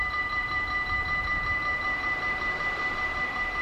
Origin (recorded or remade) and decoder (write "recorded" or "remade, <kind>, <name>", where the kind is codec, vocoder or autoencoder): remade, vocoder, BigVGAN v2